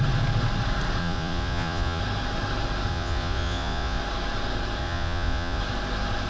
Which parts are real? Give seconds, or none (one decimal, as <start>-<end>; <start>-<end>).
0.0-1.0; 2.0-2.9; 4.0-4.8; 5.6-6.3